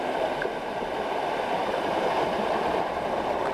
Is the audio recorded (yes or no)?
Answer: yes